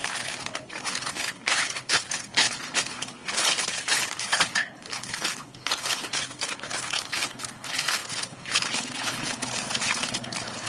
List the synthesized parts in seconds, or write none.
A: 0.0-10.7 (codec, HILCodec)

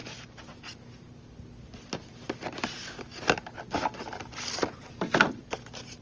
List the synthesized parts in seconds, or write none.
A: none